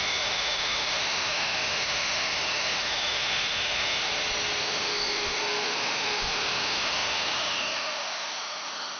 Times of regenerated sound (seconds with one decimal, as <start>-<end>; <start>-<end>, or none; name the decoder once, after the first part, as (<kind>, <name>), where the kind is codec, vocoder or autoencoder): 0.0-4.1 (autoencoder, DAC-VAE); 4.6-9.0